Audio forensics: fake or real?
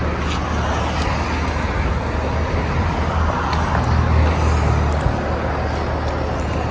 real